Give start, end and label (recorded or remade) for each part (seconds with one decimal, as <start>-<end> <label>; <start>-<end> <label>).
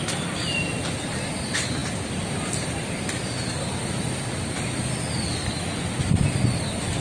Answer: 0.0-7.0 recorded